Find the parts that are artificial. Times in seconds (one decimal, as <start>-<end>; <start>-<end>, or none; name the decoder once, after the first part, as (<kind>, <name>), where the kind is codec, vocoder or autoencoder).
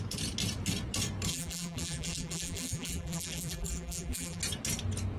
1.3-4.4 (vocoder, BigVGAN v2)